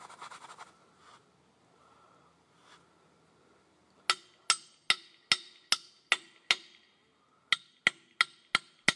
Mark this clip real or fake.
real